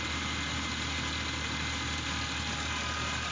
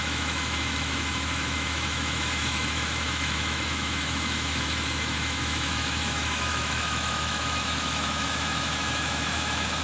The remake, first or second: second